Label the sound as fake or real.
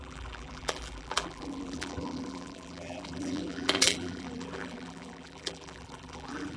fake